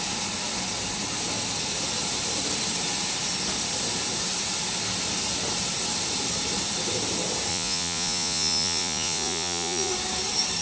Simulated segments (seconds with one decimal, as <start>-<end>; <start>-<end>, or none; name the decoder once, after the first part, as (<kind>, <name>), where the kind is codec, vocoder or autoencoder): 7.5-9.9 (vocoder, Vocos)